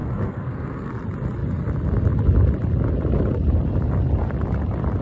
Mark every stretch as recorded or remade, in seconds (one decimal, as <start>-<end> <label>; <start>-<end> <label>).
0.0-0.9 remade; 0.9-5.0 recorded